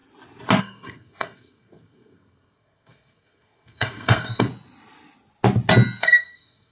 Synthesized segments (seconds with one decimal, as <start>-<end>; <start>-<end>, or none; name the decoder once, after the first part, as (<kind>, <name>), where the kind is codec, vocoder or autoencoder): 0.6-4.5 (codec, SNAC); 6.0-6.7